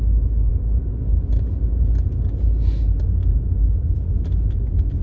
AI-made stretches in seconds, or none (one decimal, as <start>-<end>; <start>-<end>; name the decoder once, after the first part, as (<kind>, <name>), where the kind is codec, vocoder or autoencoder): none